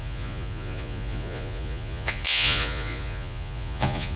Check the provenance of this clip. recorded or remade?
remade